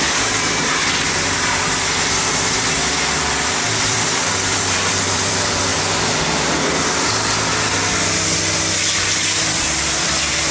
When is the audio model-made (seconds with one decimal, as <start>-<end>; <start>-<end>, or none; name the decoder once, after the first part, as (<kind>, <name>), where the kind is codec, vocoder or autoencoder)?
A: 0.0-5.7 (vocoder, BigVGAN v2); 9.5-10.5